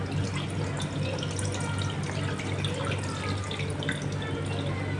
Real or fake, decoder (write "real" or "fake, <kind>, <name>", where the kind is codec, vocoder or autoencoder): real